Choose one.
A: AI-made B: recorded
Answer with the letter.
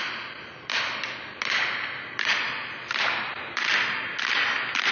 B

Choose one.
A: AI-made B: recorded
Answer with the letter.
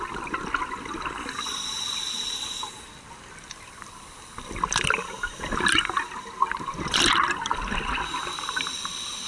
B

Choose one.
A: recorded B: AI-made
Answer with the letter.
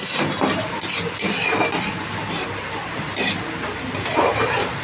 A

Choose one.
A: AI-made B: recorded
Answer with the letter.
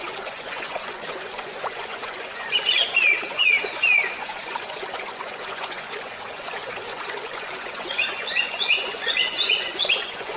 A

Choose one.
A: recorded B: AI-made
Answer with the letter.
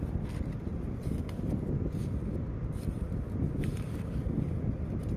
A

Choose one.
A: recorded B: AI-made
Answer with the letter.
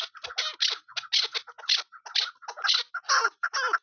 A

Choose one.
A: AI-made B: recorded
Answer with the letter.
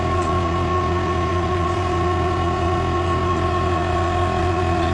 A